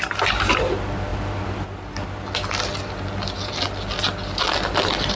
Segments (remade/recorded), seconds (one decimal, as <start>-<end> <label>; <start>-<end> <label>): 0.0-5.2 recorded